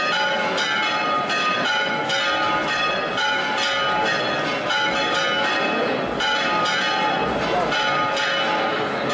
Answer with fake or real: real